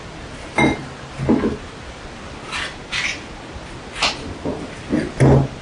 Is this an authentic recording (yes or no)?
yes